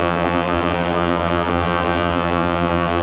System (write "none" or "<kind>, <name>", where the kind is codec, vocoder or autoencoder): vocoder, BigVGAN v2